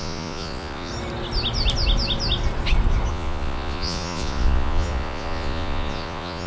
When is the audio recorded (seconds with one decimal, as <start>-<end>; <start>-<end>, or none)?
0.9-3.1